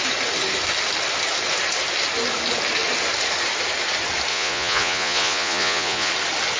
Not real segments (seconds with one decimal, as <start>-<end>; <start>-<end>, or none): 4.3-6.1